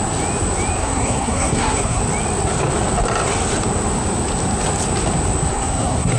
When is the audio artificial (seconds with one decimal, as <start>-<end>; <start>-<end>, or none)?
0.8-2.0; 5.5-6.2